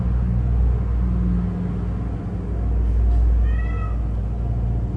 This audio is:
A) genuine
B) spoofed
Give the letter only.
A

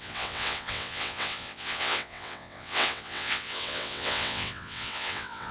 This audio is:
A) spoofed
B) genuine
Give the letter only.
A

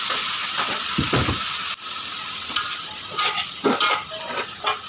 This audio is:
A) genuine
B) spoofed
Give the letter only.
A